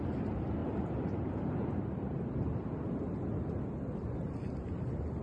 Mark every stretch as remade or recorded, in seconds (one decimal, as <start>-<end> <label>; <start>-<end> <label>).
0.0-5.2 recorded